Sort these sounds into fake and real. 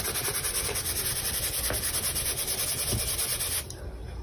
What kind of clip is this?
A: real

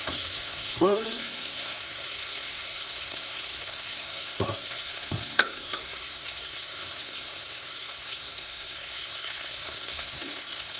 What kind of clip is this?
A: fake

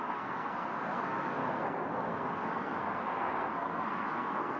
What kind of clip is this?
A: fake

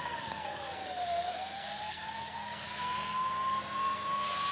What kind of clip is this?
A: fake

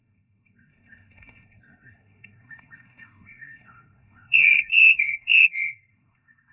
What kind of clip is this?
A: fake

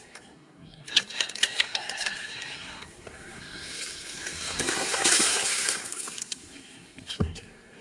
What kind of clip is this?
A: fake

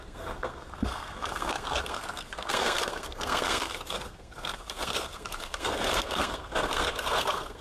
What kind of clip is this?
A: fake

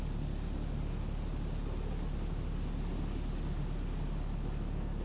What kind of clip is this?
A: real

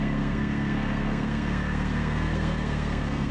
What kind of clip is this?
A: fake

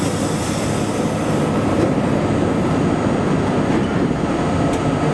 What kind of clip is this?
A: real